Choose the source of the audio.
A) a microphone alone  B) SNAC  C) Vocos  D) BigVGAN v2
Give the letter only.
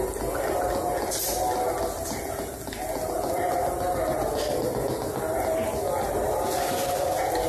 A